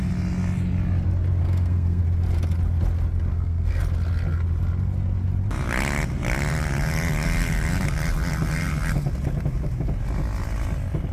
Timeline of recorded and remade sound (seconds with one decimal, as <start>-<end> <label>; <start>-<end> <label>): 0.0-1.4 recorded; 1.4-2.0 remade; 2.0-3.3 recorded; 3.3-3.8 remade; 3.8-11.1 recorded